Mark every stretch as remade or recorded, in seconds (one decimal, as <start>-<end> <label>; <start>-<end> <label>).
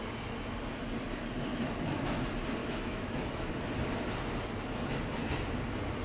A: 0.0-1.5 recorded; 1.5-2.2 remade; 2.2-2.6 recorded; 2.6-3.5 remade; 3.5-6.0 recorded